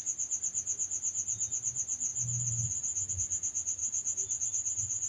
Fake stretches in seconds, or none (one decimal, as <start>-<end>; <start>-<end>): none